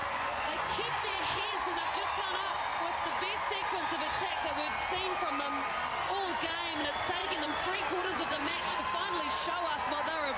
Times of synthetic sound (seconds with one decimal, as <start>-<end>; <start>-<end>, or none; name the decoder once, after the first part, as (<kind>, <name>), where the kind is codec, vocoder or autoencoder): 0.0-2.1 (vocoder, Vocos); 7.2-8.8